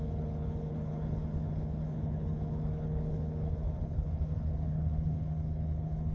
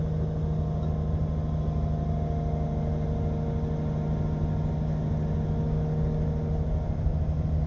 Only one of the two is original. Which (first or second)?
second